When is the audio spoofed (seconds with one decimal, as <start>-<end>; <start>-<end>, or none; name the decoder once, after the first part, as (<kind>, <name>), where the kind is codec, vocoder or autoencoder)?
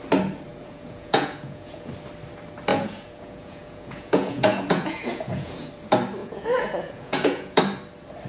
0.5-1.9 (vocoder, Vocos); 2.7-5.7; 6.2-7.6